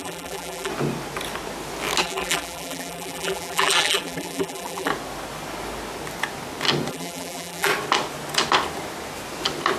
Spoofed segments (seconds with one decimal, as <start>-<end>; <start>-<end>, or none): 0.0-0.7; 2.0-4.9; 6.9-7.7